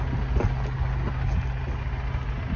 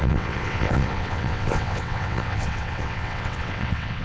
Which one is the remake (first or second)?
second